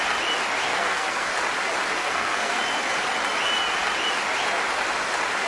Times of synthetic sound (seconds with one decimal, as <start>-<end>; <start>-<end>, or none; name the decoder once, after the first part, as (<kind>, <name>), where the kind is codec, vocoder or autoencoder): 0.7-1.3 (codec, SNAC); 2.0-2.6